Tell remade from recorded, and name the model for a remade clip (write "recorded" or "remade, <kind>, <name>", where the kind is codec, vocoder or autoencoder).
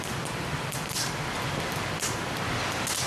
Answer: remade, vocoder, BigVGAN v2